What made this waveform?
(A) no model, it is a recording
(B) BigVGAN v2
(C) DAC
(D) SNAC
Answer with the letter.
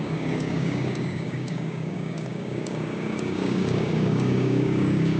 C